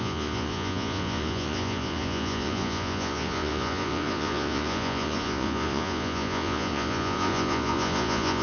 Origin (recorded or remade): remade